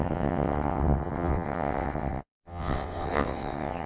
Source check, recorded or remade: remade